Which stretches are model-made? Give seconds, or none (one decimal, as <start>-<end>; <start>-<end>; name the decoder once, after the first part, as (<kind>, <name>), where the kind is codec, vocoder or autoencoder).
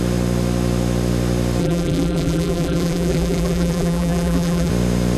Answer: 1.6-4.7 (vocoder, BigVGAN v2)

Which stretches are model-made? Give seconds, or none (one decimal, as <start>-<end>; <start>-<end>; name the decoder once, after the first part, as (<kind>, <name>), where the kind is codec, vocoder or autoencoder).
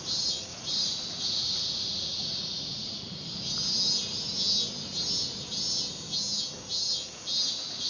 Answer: 0.5-3.0 (vocoder, Vocos)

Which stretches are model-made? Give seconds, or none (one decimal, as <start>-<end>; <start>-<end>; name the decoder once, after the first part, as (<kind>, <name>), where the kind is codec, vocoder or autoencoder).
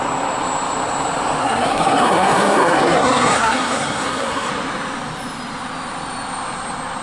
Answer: 1.4-4.5 (codec, SNAC)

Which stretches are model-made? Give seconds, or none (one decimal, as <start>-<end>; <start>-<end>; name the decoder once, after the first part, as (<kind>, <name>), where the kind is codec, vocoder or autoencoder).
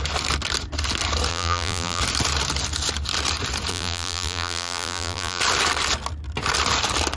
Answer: 1.3-2.0 (vocoder, BigVGAN v2); 3.7-5.4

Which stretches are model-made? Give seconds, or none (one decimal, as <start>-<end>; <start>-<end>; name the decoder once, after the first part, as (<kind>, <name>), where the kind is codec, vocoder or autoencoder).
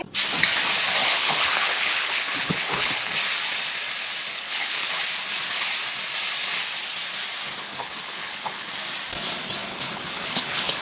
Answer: 1.0-3.1 (codec, HILCodec); 4.3-4.9; 7.6-8.7; 9.7-10.8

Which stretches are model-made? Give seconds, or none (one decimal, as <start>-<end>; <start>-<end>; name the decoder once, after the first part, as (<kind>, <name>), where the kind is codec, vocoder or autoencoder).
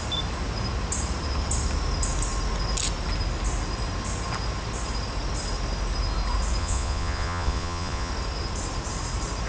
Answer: 6.6-8.1 (vocoder, Vocos)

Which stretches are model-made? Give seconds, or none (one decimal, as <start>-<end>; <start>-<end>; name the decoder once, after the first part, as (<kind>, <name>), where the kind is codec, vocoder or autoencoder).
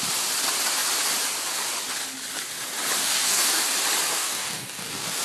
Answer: 3.0-3.6 (codec, DAC); 4.1-5.2